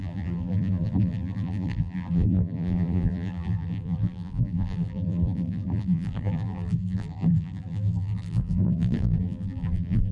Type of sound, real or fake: fake